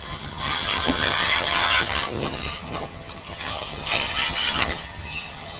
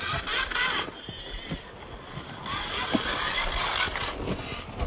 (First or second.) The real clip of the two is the second